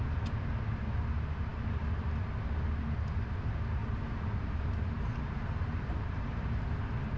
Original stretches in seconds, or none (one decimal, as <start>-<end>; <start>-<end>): 0.0-3.8; 6.8-7.2